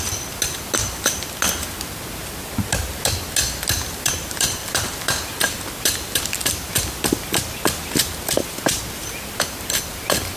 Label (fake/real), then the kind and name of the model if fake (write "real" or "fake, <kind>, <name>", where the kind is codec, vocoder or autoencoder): real